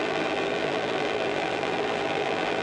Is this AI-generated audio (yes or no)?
yes